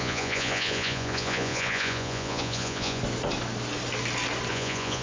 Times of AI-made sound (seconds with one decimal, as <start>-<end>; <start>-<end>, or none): 0.0-3.0; 4.5-5.0